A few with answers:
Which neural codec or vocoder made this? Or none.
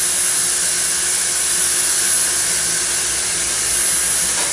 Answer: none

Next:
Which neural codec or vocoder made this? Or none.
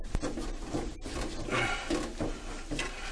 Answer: none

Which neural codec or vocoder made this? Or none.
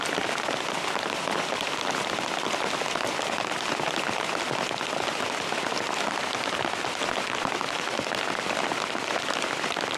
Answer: none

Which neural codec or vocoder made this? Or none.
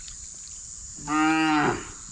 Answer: none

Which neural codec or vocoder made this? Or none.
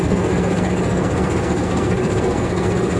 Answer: codec, SNAC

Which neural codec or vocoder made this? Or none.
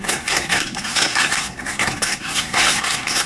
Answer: codec, SNAC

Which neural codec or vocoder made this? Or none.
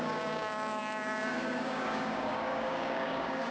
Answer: codec, DAC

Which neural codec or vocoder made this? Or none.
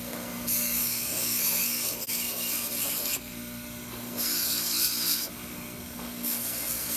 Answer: codec, SNAC